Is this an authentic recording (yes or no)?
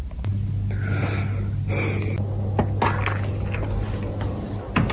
yes